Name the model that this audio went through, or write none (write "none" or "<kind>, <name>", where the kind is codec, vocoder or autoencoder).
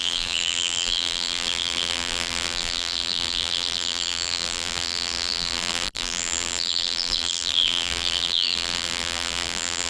vocoder, BigVGAN v2